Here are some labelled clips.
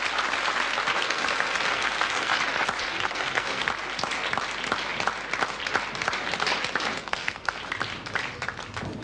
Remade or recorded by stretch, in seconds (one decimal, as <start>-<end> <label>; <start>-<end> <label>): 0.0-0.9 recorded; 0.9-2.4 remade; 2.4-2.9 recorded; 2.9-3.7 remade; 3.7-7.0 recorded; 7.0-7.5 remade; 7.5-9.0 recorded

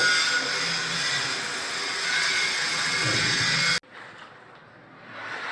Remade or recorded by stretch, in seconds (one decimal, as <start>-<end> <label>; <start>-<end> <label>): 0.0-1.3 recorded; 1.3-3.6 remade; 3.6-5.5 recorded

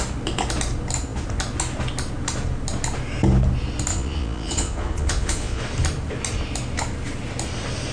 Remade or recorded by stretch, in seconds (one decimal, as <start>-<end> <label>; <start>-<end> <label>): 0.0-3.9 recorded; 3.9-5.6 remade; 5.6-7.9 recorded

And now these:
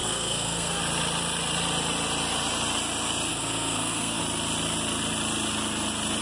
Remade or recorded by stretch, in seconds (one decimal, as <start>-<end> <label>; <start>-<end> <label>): 0.0-0.8 remade; 0.8-3.3 recorded; 3.3-4.2 remade; 4.2-6.2 recorded

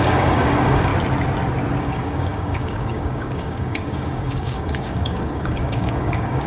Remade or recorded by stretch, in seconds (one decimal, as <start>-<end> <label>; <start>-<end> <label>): 0.0-0.9 remade; 0.9-1.8 recorded; 1.8-6.5 remade

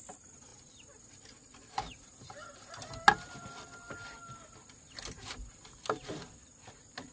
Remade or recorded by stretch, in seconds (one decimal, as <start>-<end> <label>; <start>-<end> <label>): 0.0-7.1 recorded